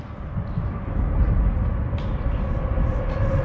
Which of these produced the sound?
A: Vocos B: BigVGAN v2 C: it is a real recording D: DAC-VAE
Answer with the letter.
C